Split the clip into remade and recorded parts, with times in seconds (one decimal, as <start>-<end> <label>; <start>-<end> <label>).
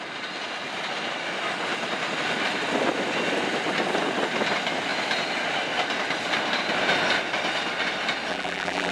0.0-8.3 recorded; 8.3-8.9 remade